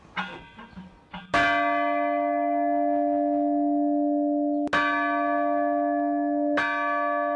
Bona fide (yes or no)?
yes